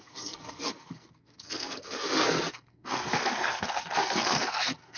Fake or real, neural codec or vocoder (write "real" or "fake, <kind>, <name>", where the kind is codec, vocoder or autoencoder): fake, codec, SNAC